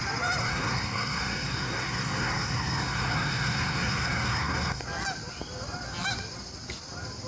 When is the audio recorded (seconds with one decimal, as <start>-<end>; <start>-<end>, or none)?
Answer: 0.0-0.4; 4.8-7.3